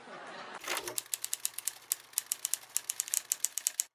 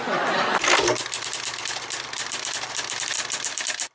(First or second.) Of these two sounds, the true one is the first